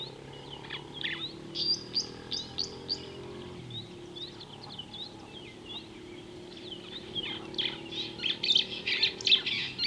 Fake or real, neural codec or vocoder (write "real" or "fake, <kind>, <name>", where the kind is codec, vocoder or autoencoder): real